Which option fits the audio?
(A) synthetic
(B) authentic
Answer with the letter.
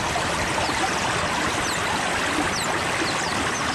B